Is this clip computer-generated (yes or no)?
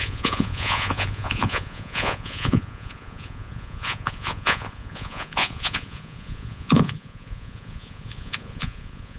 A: yes